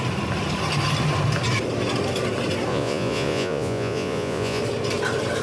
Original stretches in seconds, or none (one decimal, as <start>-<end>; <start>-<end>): 0.0-2.7; 4.6-5.4